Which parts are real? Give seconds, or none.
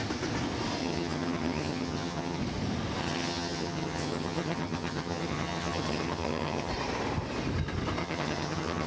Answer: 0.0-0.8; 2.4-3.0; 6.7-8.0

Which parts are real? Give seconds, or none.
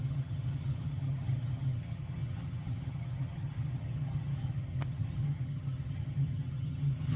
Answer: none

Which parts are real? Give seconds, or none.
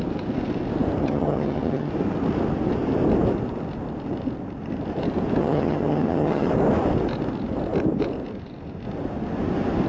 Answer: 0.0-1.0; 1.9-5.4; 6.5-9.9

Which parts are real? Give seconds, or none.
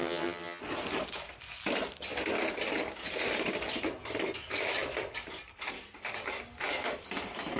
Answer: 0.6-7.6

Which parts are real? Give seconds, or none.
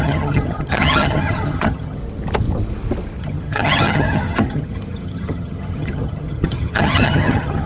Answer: 2.0-3.2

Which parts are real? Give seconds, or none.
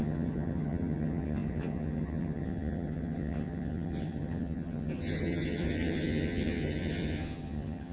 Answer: none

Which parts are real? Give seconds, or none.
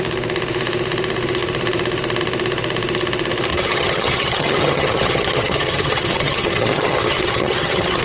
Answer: 0.0-3.5